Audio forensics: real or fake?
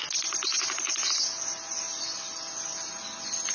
real